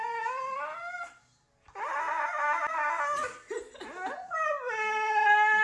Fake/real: real